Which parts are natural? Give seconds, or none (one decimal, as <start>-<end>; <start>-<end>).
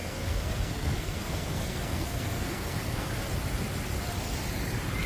3.1-5.1